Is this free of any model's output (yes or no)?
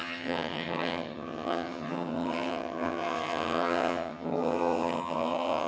no